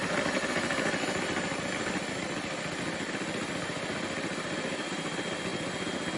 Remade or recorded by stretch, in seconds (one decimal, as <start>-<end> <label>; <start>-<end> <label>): 0.0-6.2 recorded